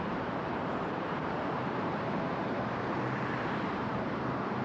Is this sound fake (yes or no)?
yes